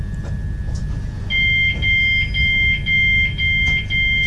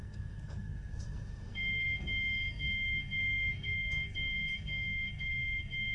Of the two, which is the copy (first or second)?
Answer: second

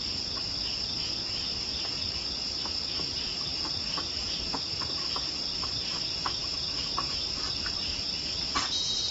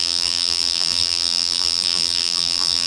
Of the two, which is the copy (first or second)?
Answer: second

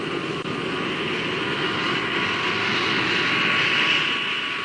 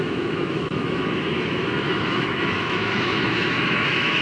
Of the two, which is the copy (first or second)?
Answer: second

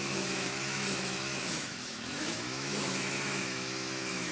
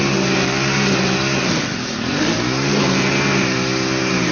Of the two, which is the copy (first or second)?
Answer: first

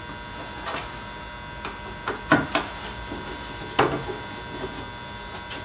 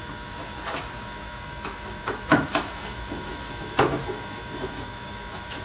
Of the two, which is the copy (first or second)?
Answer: second